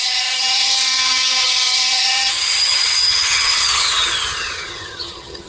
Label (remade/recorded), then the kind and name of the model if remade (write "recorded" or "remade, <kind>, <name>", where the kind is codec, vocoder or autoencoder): remade, vocoder, HiFi-GAN